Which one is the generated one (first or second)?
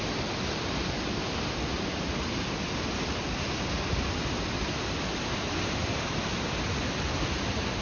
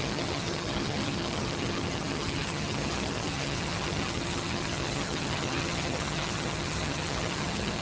second